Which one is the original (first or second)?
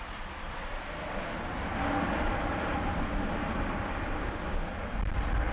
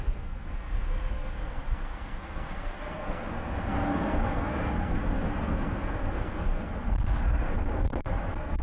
first